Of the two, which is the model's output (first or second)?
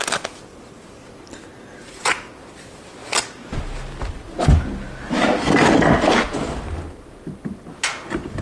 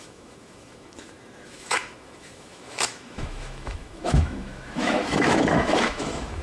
second